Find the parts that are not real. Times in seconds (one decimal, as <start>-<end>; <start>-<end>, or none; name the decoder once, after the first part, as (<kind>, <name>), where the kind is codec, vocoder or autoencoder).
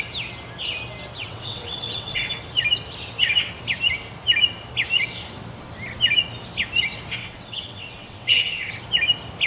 1.2-2.2 (vocoder, WaveNeXt); 7.2-8.7